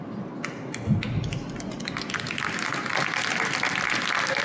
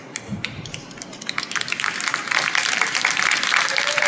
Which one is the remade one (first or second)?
second